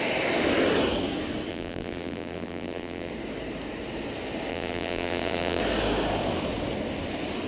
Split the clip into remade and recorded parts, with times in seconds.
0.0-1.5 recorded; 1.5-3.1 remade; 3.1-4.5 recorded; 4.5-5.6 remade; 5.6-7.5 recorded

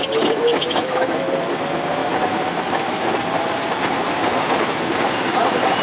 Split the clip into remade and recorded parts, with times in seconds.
0.0-2.0 recorded; 2.0-5.8 remade

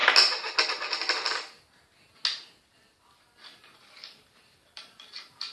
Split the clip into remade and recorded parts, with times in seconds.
0.0-3.1 recorded; 3.1-5.5 remade